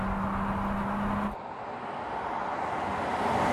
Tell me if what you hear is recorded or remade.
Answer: recorded